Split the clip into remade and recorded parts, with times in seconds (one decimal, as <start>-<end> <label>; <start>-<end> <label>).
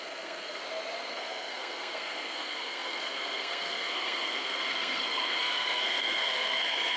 0.0-0.6 remade; 0.6-1.1 recorded; 1.1-7.0 remade